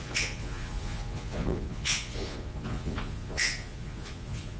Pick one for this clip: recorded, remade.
remade